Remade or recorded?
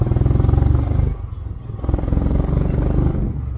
recorded